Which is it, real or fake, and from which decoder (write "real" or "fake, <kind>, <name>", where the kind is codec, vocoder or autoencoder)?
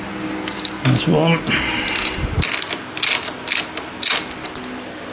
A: real